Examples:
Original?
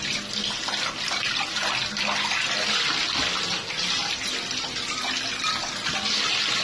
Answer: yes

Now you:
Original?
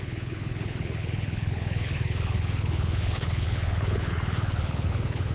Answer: no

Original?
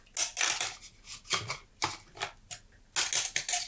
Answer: yes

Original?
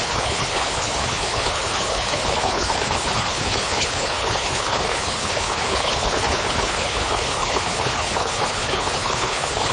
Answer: no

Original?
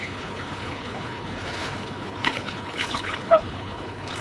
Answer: no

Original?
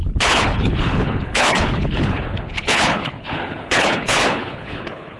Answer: no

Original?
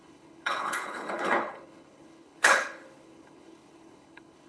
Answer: no